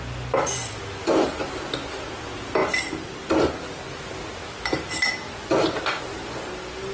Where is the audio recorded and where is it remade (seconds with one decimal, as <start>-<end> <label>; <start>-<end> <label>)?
0.0-6.9 recorded